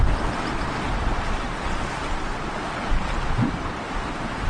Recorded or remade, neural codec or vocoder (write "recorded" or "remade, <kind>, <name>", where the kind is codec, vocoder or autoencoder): recorded